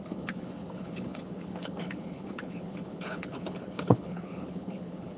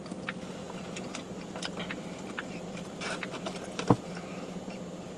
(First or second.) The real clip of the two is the second